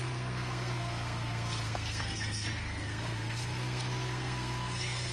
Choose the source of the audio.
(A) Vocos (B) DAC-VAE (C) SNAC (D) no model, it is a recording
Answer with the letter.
C